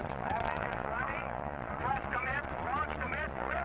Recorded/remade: remade